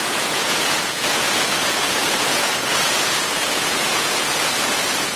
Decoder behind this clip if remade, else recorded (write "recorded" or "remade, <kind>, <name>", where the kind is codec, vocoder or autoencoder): remade, vocoder, Vocos